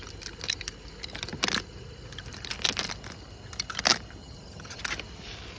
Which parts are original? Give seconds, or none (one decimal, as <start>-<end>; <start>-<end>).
0.0-4.2; 4.8-5.6